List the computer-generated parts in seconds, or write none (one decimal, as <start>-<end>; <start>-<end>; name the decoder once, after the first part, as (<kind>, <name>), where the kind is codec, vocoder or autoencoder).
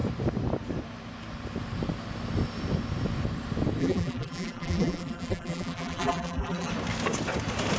3.8-6.7 (vocoder, BigVGAN v2)